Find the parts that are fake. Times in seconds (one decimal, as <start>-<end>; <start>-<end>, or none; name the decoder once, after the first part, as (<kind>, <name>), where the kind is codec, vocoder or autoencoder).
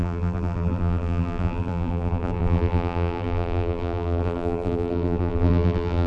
0.0-6.1 (vocoder, BigVGAN v2)